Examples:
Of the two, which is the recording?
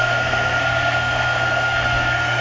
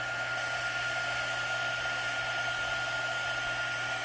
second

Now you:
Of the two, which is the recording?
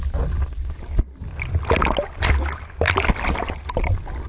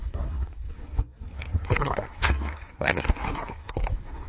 first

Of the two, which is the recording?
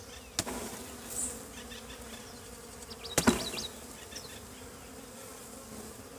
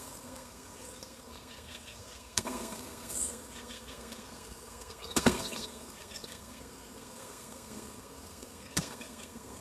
first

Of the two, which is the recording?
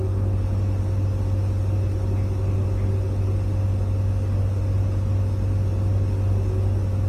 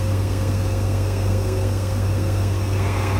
first